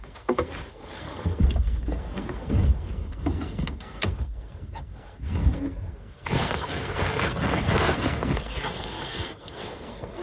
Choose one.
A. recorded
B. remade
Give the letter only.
B